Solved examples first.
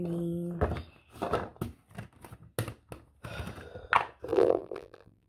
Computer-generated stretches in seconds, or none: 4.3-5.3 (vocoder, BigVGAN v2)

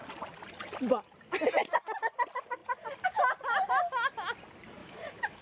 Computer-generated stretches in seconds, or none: 4.8-5.4 (autoencoder, DAC-VAE)

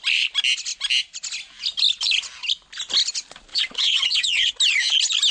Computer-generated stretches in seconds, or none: 3.5-4.5 (vocoder, WaveNeXt)